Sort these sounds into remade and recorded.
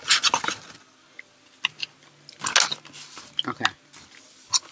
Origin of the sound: recorded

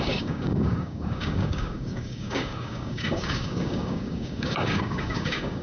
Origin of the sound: remade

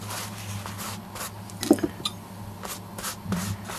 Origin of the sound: recorded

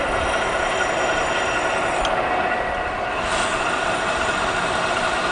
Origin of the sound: recorded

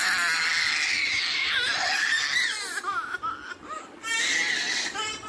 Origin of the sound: recorded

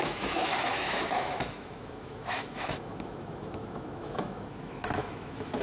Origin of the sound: remade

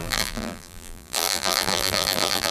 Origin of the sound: remade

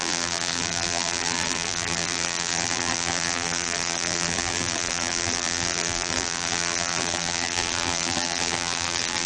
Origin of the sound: remade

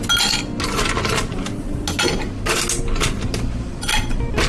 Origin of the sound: recorded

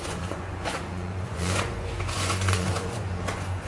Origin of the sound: remade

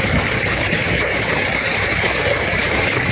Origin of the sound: remade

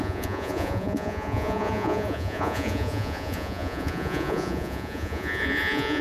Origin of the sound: remade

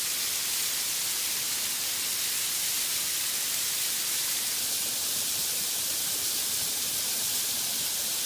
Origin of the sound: recorded